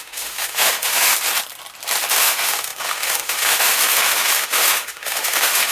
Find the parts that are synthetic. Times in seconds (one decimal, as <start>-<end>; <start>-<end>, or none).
0.0-1.1; 2.1-5.7